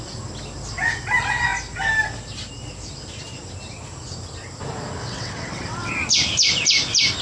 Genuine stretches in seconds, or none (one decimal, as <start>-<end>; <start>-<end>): 0.0-5.0; 5.9-7.2